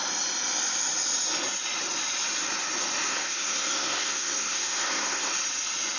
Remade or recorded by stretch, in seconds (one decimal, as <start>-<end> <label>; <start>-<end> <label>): 0.0-3.1 recorded; 3.1-5.3 remade; 5.3-6.0 recorded